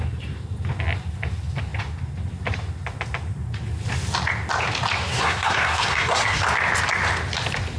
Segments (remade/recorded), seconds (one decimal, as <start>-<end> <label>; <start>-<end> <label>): 0.0-5.1 recorded; 5.1-6.4 remade; 6.4-7.8 recorded